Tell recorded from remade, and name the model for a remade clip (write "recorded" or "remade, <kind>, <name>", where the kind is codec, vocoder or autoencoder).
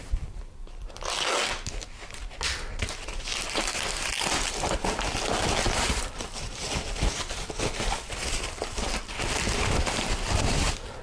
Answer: recorded